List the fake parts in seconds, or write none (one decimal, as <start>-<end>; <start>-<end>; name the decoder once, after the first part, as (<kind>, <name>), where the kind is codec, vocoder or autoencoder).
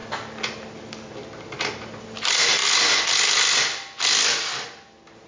none